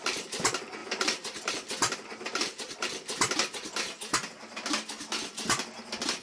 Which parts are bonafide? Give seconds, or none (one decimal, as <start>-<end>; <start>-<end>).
0.0-0.8; 1.5-6.2